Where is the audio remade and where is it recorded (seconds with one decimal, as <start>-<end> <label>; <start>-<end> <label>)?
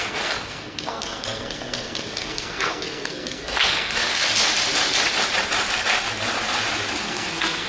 0.0-4.1 remade; 4.1-7.0 recorded; 7.0-7.7 remade